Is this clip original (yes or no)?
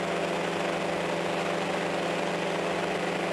yes